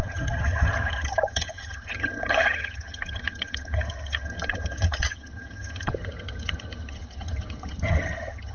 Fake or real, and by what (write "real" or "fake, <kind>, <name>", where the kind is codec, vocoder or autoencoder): fake, vocoder, HiFi-GAN